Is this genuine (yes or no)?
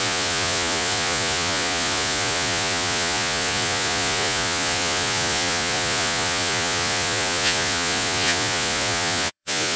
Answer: no